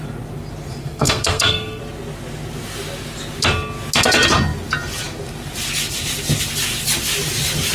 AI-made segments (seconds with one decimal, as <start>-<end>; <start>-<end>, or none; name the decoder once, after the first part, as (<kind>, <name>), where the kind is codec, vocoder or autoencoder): 0.8-1.8 (codec, SNAC)

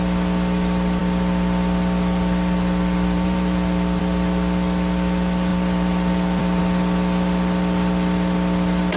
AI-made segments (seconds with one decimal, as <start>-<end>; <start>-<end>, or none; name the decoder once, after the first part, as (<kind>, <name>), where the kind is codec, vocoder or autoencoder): 5.5-6.6 (vocoder, BigVGAN v2)

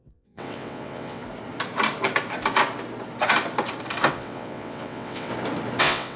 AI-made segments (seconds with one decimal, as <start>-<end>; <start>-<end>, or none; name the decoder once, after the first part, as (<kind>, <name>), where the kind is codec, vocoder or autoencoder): 0.0-1.2 (vocoder, WaveNeXt); 4.1-5.3; 5.8-6.2

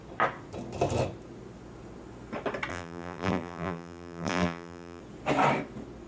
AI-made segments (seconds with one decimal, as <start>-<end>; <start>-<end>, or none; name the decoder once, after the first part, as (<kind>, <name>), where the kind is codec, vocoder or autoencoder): 2.7-5.0 (vocoder, BigVGAN v2)

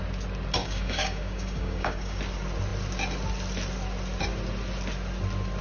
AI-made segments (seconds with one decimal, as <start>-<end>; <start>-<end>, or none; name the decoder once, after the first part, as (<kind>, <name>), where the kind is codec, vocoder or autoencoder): 0.6-2.2 (codec, DAC)

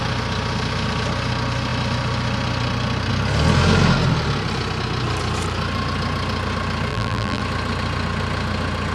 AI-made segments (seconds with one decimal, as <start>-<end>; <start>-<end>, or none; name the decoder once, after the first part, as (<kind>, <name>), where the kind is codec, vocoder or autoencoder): 6.9-7.4 (vocoder, BigVGAN v2)

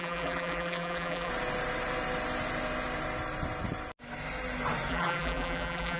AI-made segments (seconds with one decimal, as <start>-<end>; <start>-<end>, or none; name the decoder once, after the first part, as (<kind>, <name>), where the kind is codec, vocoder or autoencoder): 0.0-1.3 (vocoder, BigVGAN v2); 4.9-6.0